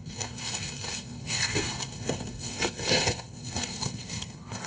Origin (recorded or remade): remade